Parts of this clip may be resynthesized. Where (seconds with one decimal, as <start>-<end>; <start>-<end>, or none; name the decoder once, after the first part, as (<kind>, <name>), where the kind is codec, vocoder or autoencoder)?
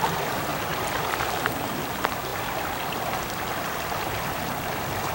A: none